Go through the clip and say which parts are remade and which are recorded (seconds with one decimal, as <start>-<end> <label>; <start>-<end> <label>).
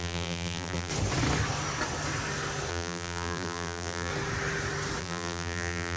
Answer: 0.0-0.9 remade; 0.9-2.7 recorded; 2.7-4.1 remade; 4.1-5.0 recorded; 5.0-6.0 remade